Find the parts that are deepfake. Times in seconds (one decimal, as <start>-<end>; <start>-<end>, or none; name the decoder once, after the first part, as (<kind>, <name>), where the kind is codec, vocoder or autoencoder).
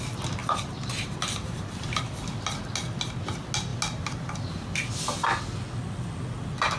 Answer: 0.4-2.0 (vocoder, BigVGAN v2)